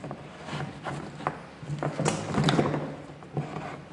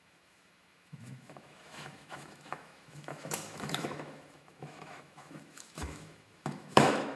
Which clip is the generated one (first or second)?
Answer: second